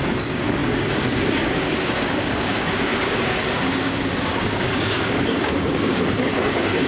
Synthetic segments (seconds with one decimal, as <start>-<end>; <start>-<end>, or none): 0.0-6.9